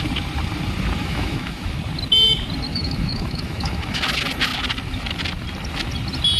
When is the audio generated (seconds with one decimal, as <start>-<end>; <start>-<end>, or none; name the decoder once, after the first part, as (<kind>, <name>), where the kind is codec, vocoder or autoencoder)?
1.0-1.8 (autoencoder, DAC-VAE); 2.7-4.0